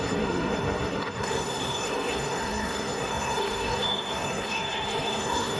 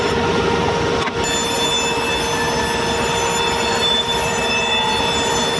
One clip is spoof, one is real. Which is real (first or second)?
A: second